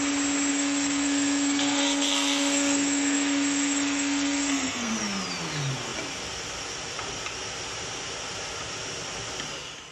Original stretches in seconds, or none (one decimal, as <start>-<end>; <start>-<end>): 0.0-0.5; 4.9-9.9